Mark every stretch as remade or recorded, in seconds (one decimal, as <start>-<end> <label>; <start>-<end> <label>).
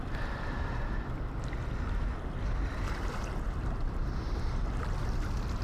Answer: 0.0-5.6 recorded